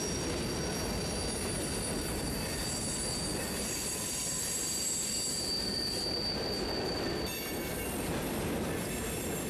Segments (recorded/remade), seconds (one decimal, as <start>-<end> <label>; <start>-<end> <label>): 0.0-9.5 recorded